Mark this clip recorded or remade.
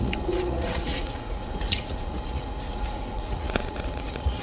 remade